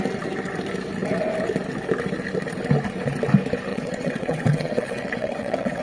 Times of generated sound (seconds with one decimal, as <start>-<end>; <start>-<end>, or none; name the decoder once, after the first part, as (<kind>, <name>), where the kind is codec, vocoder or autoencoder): 3.7-5.8 (vocoder, WaveNeXt)